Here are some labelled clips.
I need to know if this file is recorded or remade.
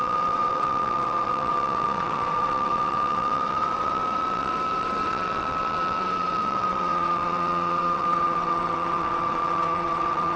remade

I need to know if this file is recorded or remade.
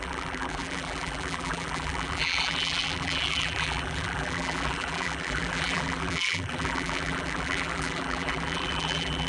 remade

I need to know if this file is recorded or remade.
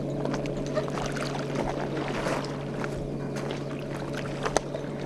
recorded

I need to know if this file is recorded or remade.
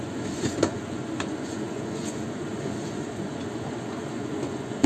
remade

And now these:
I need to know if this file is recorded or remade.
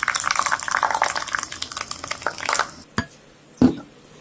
recorded